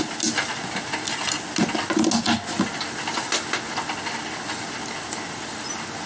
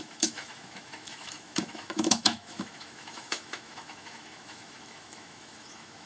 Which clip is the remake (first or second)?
second